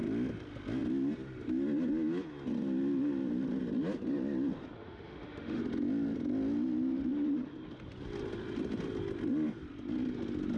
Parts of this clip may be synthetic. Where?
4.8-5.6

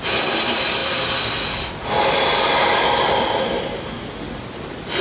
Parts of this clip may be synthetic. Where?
none

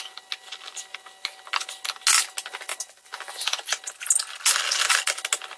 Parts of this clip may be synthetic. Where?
none

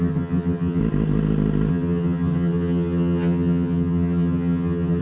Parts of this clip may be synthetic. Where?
0.0-0.8; 1.7-5.0